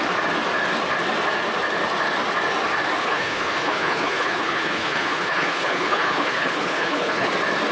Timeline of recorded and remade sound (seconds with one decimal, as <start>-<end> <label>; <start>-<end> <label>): 0.0-3.0 recorded; 3.0-7.3 remade; 7.3-7.7 recorded